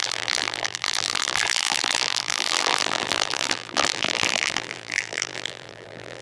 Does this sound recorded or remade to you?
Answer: remade